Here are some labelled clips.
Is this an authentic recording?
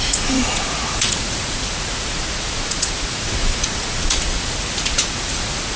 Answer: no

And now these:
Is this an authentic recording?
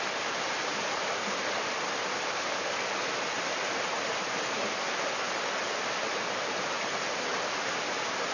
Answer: yes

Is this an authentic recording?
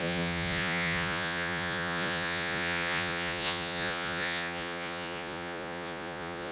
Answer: no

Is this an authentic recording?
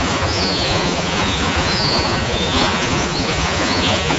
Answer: no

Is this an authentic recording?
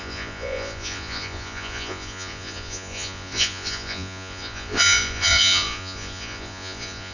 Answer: no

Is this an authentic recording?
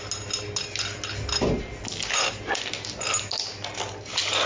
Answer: yes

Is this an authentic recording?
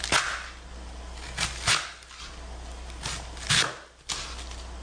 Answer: yes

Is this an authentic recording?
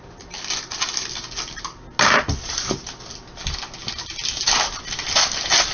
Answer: yes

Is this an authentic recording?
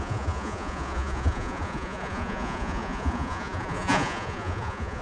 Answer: no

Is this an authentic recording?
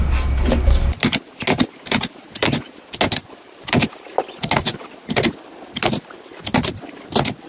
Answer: yes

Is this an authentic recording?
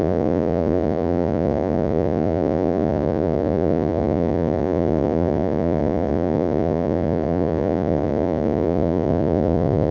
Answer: no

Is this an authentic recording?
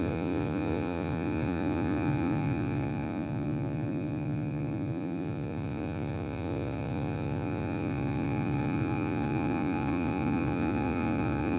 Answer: no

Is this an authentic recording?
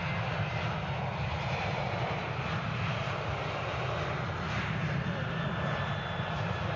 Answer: yes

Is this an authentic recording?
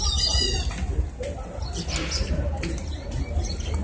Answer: yes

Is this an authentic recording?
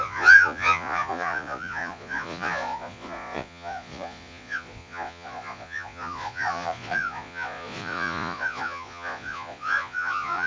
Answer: no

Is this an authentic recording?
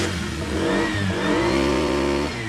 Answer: no